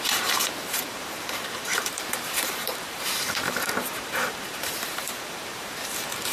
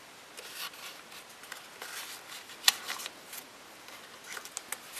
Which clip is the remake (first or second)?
first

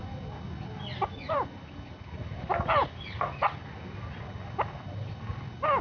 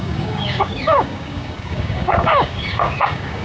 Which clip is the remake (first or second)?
second